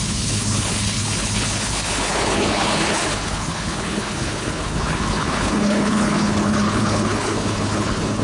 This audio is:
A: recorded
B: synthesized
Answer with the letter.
B